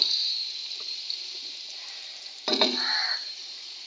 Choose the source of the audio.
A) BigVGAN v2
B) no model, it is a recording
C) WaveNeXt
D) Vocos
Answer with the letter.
A